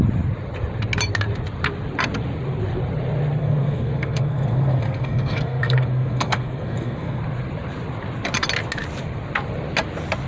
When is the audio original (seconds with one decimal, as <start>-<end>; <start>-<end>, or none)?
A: 0.0-3.4; 7.2-10.3